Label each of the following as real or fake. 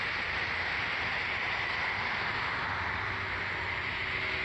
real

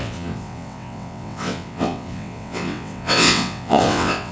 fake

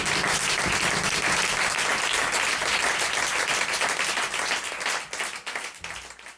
real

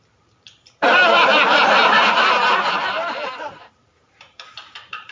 fake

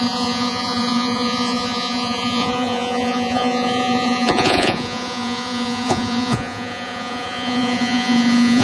fake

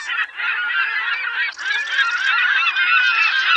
real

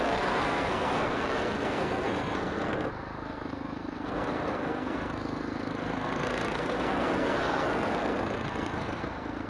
fake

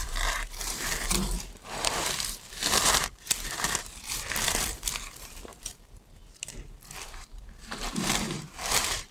fake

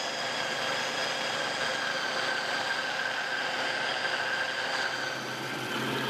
real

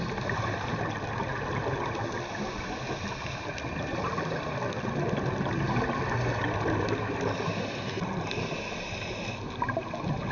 real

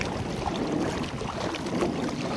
real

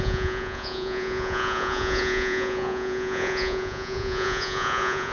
fake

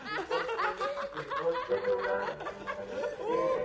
real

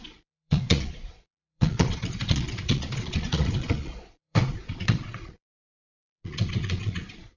fake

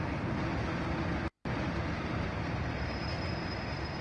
real